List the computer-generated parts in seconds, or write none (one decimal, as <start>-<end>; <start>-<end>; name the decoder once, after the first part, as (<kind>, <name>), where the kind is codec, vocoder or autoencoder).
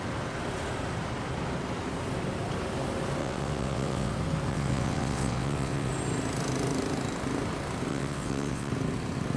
3.2-4.1 (vocoder, WaveNeXt); 4.5-5.9; 7.9-8.7